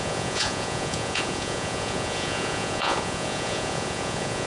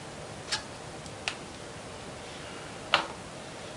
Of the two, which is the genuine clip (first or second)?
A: second